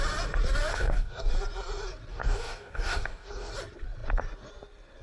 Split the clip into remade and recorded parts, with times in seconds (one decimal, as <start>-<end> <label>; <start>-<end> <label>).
0.0-0.7 recorded; 0.7-1.3 remade; 1.3-2.1 recorded; 2.1-3.5 remade; 3.5-5.0 recorded